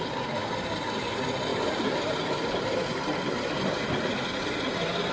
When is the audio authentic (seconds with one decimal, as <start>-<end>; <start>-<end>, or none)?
0.0-1.5; 3.8-5.1